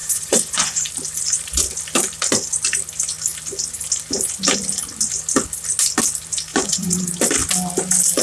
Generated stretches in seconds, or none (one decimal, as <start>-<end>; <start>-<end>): 0.0-0.9; 6.5-7.0